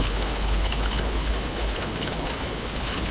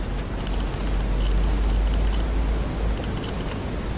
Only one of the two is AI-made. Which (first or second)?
first